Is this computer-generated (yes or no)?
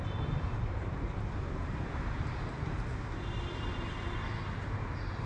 yes